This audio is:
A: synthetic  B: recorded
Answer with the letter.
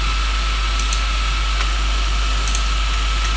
B